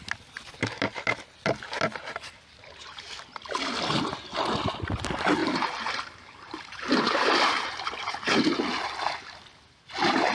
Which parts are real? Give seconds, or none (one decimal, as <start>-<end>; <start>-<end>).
0.0-5.4; 8.5-10.3